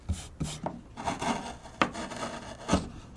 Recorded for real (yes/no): yes